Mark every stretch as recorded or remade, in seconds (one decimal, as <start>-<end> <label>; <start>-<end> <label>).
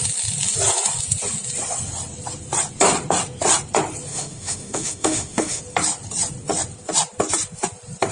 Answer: 0.0-4.1 recorded; 4.1-5.6 remade; 5.6-8.1 recorded